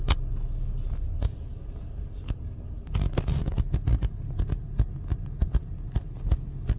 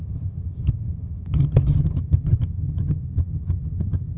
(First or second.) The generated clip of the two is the second